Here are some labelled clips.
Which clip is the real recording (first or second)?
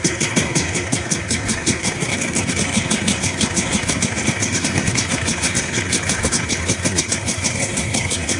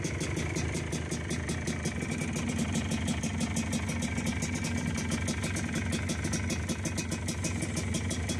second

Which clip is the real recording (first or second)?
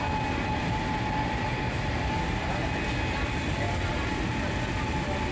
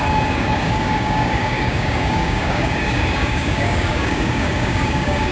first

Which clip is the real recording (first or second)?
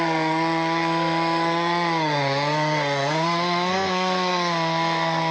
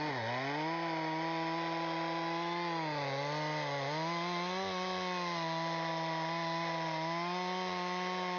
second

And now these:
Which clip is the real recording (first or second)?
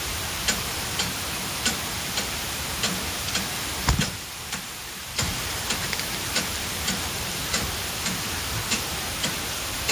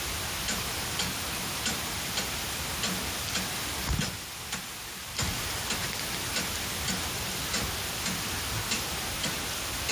second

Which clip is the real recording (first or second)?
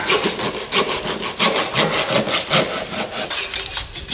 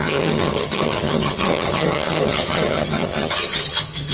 first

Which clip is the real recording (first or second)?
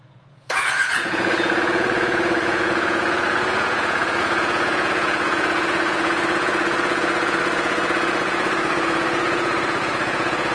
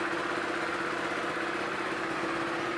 second